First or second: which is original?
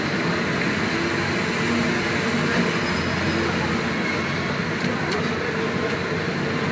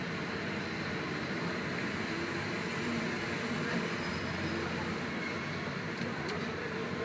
first